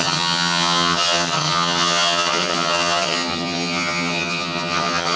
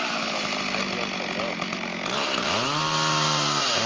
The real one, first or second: second